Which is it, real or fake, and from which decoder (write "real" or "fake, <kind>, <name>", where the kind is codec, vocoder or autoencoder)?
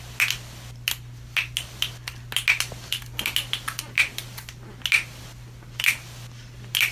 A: real